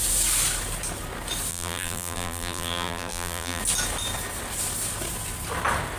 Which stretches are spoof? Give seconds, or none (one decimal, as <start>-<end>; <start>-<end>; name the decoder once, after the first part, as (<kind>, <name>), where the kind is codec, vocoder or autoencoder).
1.5-3.6 (vocoder, BigVGAN v2)